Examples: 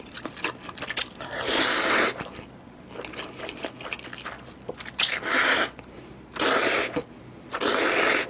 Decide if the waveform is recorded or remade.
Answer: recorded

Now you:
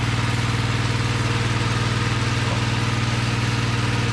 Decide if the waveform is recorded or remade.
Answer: recorded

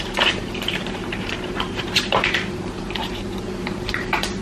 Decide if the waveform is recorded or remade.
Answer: remade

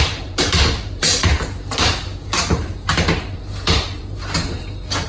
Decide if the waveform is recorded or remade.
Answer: remade